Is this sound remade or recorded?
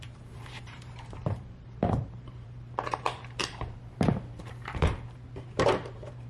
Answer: remade